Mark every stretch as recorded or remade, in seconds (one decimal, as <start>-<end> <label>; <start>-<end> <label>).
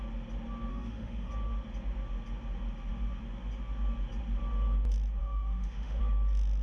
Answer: 0.0-0.7 recorded; 0.7-1.3 remade; 1.3-5.2 recorded; 5.2-6.0 remade; 6.0-6.6 recorded